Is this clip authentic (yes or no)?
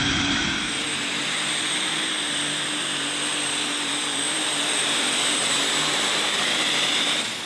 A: no